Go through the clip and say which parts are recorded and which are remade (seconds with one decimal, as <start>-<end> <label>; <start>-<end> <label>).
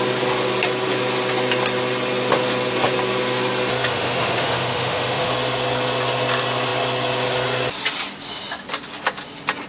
0.0-3.9 recorded; 3.9-5.3 remade; 5.3-9.7 recorded